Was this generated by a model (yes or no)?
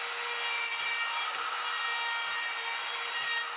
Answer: no